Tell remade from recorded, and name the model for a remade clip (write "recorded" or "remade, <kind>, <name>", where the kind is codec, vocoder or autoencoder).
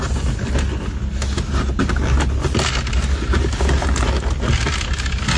recorded